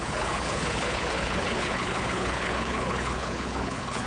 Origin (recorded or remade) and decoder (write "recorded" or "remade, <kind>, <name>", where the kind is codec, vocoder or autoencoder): remade, codec, HILCodec